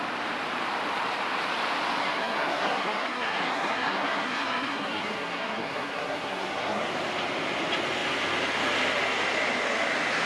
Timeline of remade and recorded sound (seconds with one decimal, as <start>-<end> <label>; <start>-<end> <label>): 0.0-2.0 recorded; 2.0-6.9 remade; 6.9-10.3 recorded